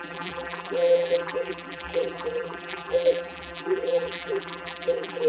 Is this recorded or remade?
remade